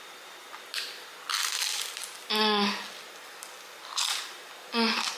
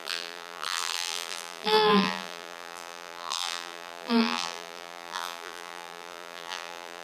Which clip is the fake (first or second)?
second